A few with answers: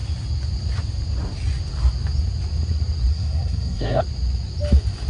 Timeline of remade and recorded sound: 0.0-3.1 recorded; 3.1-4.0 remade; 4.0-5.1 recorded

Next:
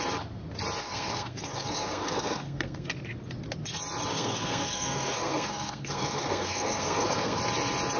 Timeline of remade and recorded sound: 0.0-0.8 recorded; 0.8-2.9 remade; 2.9-4.1 recorded; 4.1-7.4 remade; 7.4-8.0 recorded